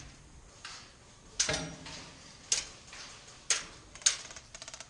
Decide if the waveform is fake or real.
real